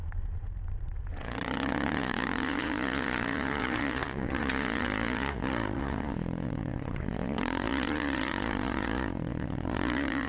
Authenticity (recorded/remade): remade